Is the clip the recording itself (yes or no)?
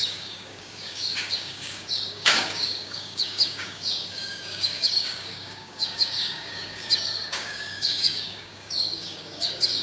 no